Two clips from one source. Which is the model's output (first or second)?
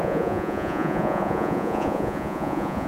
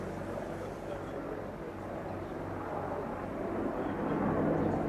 first